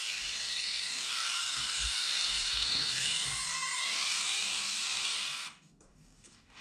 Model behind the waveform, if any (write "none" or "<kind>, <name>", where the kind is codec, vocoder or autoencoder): codec, DAC